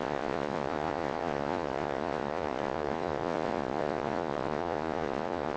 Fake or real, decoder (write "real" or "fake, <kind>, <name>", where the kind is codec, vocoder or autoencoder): fake, vocoder, Vocos